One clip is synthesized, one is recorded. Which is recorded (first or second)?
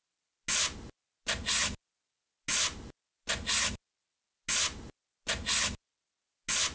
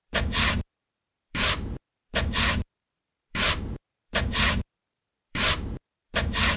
first